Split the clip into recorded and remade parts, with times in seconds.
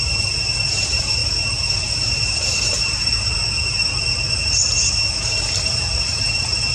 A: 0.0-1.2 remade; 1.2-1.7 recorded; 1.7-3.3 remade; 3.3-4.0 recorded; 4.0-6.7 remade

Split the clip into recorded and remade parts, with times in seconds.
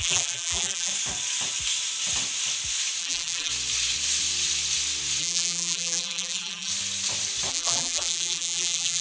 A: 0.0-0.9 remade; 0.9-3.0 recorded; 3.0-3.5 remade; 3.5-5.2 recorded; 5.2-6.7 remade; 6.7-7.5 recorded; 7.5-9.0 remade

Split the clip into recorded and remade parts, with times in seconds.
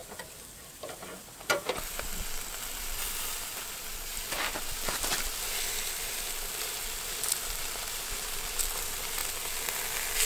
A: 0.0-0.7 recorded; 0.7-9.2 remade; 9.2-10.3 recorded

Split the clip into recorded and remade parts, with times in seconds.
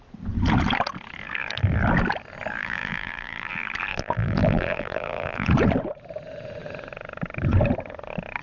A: 0.0-2.6 recorded; 2.6-3.5 remade; 3.5-3.9 recorded; 3.9-5.5 remade; 5.5-8.4 recorded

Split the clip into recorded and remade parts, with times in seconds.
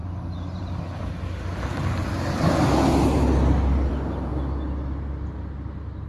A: 0.0-6.1 recorded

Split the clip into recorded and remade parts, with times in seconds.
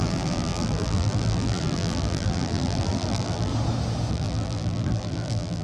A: 0.0-3.5 remade; 3.5-4.1 recorded; 4.1-5.6 remade